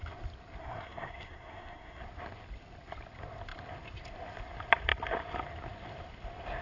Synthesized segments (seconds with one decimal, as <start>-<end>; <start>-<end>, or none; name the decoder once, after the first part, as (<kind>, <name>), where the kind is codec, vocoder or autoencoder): 0.6-2.0 (codec, SNAC)